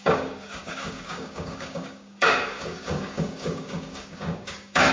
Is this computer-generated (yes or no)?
yes